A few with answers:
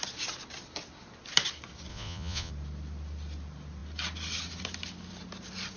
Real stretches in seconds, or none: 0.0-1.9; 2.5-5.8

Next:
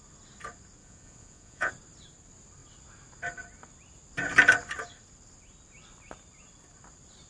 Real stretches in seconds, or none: 0.0-0.8; 1.7-7.3

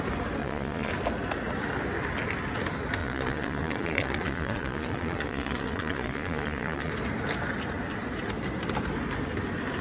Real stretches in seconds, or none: 0.0-0.4; 0.9-3.0; 6.9-9.8

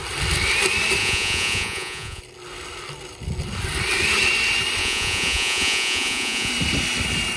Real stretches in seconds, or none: 0.0-1.0; 2.2-4.8; 6.5-7.4

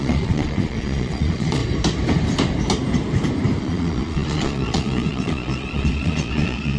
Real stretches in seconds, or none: 1.6-3.6

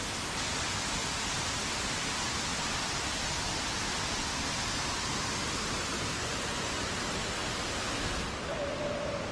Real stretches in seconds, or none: 0.0-6.2; 6.9-9.3

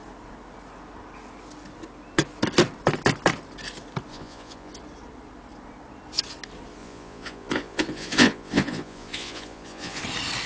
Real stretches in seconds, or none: 0.0-4.1; 4.7-6.8; 10.0-10.5

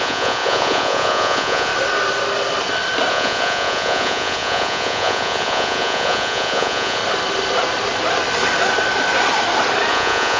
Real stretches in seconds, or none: 1.7-3.1; 7.0-9.9